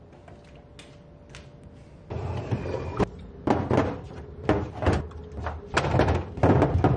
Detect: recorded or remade recorded